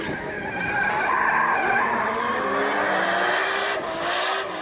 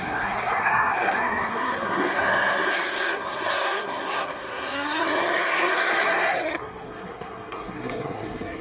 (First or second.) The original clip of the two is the first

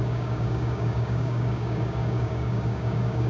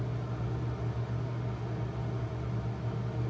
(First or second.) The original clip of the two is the second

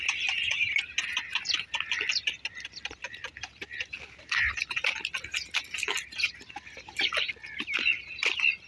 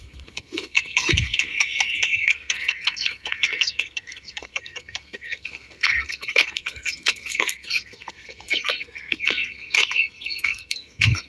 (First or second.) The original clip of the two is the first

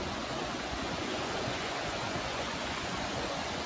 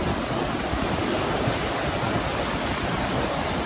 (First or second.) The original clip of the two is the second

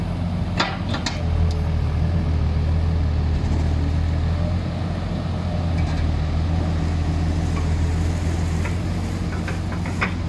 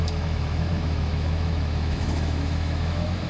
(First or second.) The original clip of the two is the first